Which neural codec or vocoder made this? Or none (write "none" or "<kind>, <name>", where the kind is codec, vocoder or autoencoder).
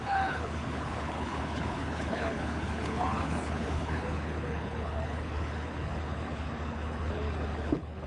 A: codec, HILCodec